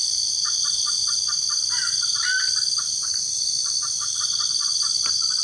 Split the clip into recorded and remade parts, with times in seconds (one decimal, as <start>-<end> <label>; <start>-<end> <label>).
0.0-5.4 recorded